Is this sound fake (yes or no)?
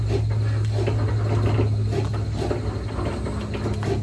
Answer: no